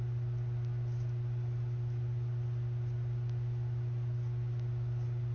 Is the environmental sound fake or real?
real